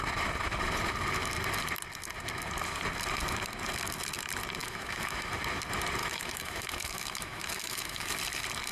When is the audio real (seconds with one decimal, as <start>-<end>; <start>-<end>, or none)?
0.0-4.6; 5.3-6.0; 8.1-8.7